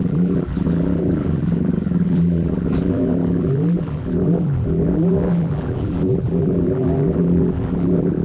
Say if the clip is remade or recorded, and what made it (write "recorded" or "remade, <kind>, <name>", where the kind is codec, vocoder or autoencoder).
remade, vocoder, BigVGAN v2